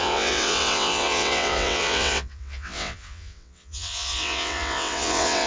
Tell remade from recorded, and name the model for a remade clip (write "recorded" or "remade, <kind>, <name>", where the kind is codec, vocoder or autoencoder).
remade, vocoder, WaveNeXt